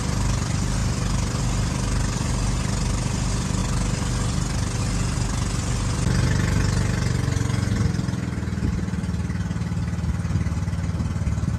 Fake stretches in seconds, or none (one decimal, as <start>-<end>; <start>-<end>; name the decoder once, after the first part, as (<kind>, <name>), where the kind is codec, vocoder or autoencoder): none